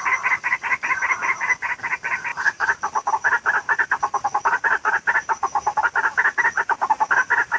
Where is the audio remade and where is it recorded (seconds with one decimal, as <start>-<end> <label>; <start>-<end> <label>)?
0.0-7.6 recorded